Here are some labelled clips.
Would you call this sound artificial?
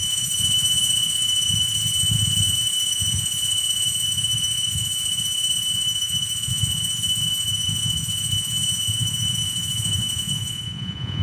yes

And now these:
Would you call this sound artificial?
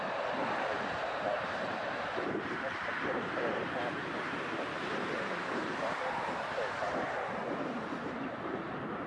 yes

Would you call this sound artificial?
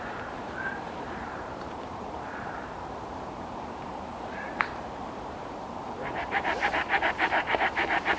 yes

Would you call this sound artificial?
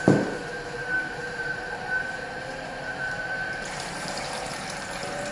yes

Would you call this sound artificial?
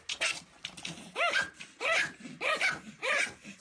no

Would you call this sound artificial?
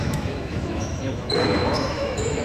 yes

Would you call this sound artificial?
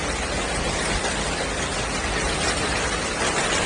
no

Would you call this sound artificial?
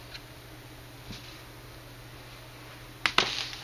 no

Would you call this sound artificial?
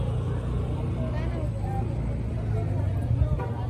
no